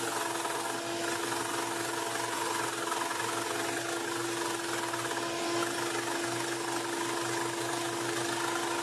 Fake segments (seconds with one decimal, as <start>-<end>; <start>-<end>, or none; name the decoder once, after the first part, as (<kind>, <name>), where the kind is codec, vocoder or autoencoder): none

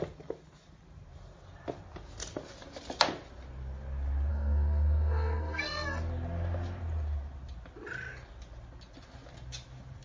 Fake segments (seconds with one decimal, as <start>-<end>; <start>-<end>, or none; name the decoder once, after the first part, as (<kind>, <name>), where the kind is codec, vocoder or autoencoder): 4.3-6.0 (codec, SNAC)

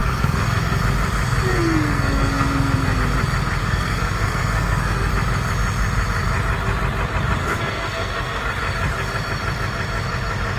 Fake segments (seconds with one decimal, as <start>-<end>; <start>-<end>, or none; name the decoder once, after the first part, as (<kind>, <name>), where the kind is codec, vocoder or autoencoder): 0.0-0.8 (codec, SNAC); 1.5-3.0; 3.6-5.1; 7.4-8.4